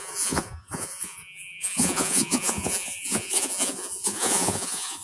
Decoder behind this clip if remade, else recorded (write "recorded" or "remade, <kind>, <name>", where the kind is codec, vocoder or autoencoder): remade, vocoder, Vocos